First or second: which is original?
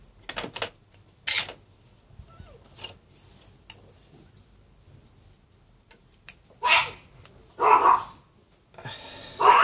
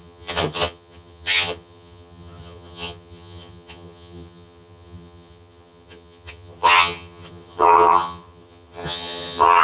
first